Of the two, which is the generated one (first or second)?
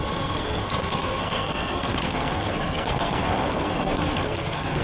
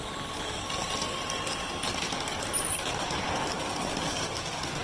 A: first